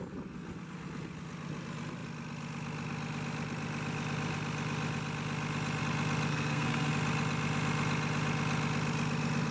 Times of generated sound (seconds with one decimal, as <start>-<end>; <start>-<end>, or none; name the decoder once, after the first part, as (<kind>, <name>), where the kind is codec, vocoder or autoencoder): 6.3-6.9 (codec, SNAC)

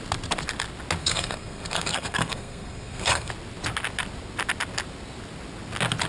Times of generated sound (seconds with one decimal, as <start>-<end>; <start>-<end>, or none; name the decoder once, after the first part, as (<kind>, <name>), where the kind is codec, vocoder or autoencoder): 1.0-3.3 (codec, SNAC)